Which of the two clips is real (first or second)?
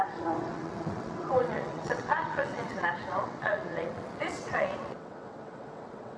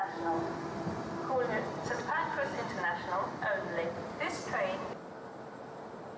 second